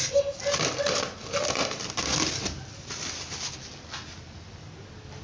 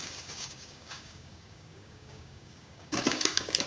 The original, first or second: first